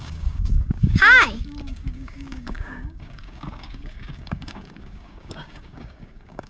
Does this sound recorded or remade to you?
remade